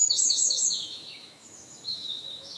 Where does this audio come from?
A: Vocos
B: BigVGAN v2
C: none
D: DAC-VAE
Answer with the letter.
D